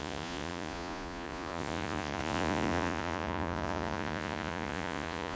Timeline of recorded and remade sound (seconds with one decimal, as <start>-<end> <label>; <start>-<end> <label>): 0.0-5.4 remade

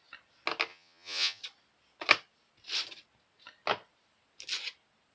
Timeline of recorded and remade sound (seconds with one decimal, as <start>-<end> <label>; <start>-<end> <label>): 0.0-0.7 recorded; 0.7-1.4 remade; 1.4-5.1 recorded